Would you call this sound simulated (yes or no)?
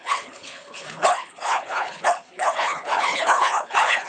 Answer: yes